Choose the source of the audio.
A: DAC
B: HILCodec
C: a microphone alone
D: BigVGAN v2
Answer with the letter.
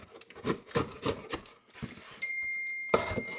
C